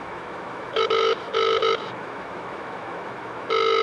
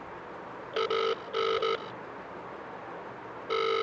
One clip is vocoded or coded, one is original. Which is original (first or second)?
second